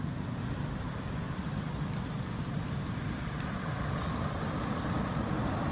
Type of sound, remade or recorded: recorded